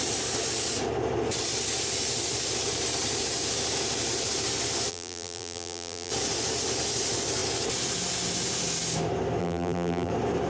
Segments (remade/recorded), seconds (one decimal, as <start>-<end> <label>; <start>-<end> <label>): 0.0-4.9 recorded; 4.9-6.1 remade; 6.1-9.4 recorded; 9.4-10.1 remade; 10.1-10.5 recorded